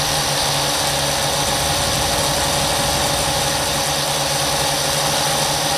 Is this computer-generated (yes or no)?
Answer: no